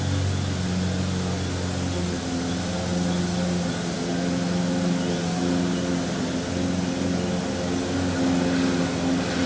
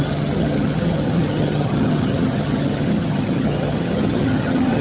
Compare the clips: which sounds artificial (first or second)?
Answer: second